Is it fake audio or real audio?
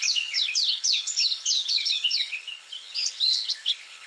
fake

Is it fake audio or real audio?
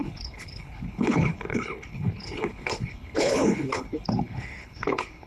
fake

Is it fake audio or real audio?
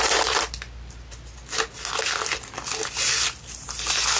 real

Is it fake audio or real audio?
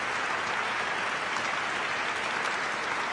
real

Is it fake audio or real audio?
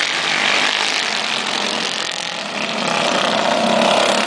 real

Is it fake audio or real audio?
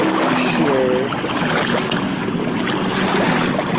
real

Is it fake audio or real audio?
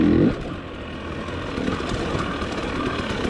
real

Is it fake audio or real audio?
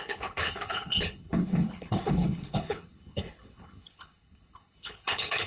fake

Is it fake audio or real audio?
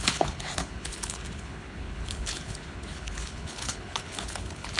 fake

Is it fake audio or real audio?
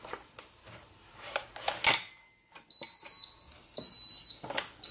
real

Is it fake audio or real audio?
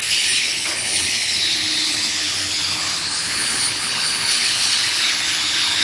fake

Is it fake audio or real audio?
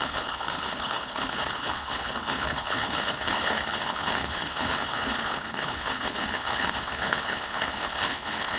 fake